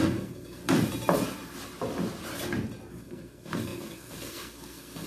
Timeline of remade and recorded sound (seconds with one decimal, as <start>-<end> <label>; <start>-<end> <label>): 0.0-0.6 remade; 0.6-2.9 recorded; 2.9-5.1 remade